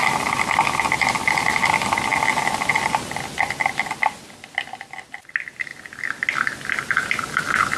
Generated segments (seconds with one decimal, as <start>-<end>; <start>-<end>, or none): none